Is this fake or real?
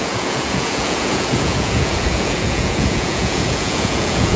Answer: fake